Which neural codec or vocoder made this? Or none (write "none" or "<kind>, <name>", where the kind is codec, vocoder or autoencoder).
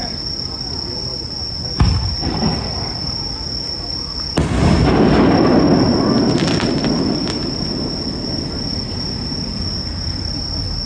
none